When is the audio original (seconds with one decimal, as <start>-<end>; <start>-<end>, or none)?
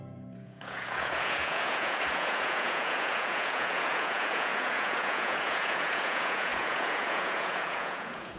none